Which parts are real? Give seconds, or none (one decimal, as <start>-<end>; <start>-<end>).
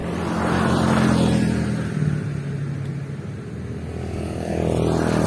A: 0.0-4.0; 4.6-5.3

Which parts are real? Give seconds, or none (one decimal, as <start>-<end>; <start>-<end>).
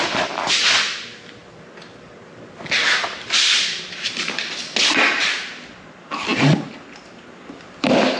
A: 0.0-1.4; 5.3-8.2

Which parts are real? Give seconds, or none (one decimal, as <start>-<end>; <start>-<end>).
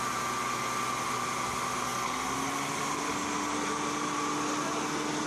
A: 0.0-5.3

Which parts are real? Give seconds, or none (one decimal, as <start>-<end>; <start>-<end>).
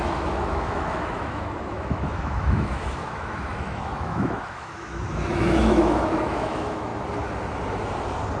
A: 6.9-8.4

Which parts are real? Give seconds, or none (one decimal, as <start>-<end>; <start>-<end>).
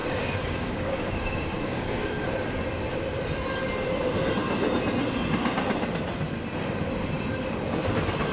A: 2.3-8.3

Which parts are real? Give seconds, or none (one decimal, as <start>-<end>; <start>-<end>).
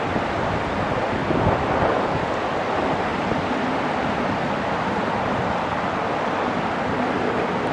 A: 0.0-7.7